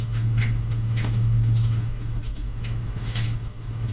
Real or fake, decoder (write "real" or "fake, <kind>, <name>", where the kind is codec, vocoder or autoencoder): fake, autoencoder, DAC-VAE